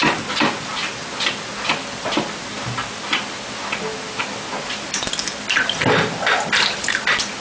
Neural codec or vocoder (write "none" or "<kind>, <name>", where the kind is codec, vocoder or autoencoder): none